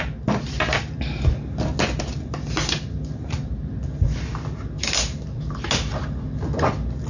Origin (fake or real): real